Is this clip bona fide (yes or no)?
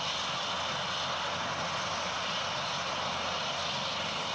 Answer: yes